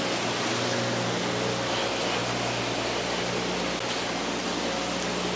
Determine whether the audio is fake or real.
real